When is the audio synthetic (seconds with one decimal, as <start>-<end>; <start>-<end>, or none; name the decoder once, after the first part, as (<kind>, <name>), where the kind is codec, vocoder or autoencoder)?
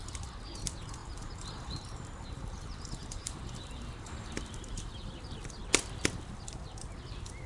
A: 1.0-4.9 (vocoder, BigVGAN v2)